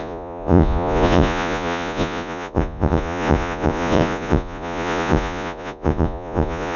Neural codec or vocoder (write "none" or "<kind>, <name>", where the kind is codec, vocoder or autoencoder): vocoder, Vocos